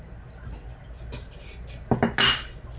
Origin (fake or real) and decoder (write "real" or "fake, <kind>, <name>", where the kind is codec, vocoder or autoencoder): real